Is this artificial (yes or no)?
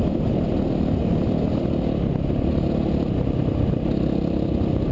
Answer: no